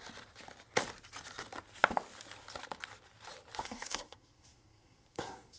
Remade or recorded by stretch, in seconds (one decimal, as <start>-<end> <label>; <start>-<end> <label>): 0.0-3.6 recorded; 3.6-5.6 remade